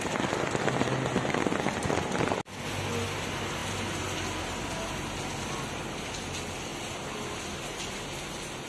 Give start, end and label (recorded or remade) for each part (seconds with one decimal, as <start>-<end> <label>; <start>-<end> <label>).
0.0-8.7 recorded